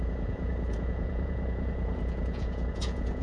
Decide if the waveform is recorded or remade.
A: remade